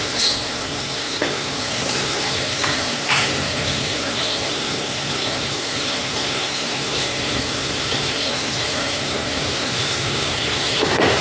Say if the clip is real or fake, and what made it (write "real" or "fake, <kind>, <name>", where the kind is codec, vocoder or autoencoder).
fake, codec, SNAC